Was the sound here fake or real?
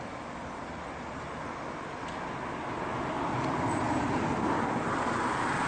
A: real